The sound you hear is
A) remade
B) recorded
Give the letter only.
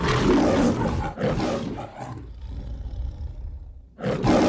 B